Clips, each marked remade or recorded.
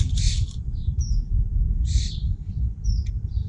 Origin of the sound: recorded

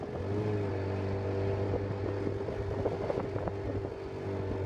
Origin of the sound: recorded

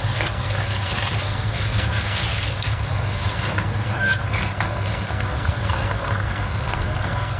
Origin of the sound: remade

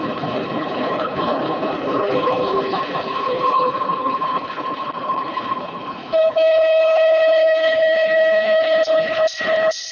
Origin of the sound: remade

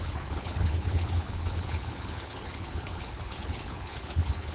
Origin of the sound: remade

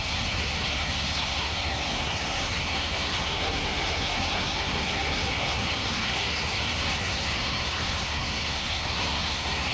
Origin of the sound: remade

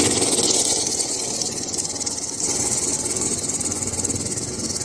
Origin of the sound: remade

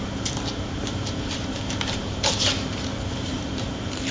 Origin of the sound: remade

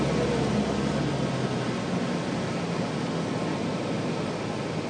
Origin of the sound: recorded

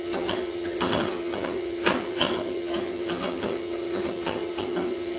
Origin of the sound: remade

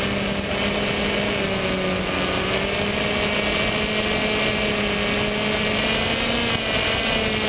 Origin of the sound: recorded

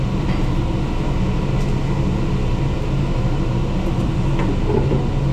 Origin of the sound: recorded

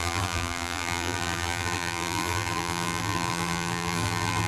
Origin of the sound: remade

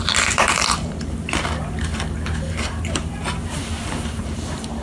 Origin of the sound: remade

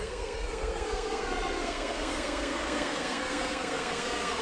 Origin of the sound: remade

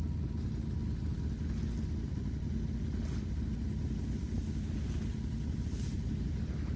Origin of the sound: recorded